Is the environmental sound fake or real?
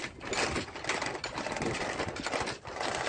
real